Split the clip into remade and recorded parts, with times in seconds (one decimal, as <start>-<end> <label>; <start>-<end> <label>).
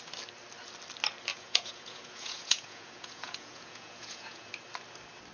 0.0-1.3 recorded; 1.3-4.5 remade; 4.5-5.3 recorded